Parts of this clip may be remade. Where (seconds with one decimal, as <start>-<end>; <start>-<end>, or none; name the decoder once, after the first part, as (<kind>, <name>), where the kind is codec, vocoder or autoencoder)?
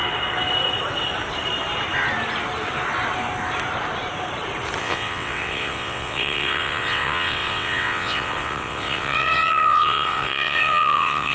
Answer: 4.8-11.3 (vocoder, WaveNeXt)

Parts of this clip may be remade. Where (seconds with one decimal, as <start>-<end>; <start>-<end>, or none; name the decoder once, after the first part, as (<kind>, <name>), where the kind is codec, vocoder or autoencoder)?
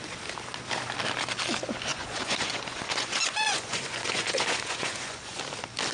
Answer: 1.9-5.4 (vocoder, Vocos)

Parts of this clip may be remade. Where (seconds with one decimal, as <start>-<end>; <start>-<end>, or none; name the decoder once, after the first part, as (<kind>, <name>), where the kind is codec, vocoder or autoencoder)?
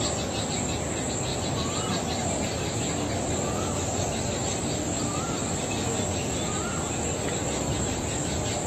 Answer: none